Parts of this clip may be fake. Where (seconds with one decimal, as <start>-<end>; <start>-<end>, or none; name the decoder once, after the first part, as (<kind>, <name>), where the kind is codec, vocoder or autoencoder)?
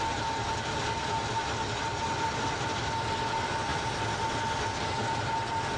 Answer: none